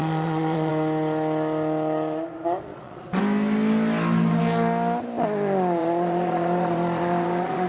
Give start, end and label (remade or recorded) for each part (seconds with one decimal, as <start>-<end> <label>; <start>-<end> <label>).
0.0-0.7 remade; 0.7-2.7 recorded; 2.7-3.2 remade; 3.2-5.8 recorded; 5.8-7.7 remade